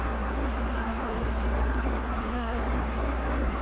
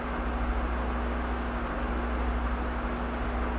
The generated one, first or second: first